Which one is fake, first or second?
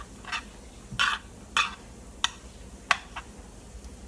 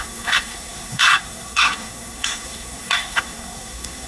second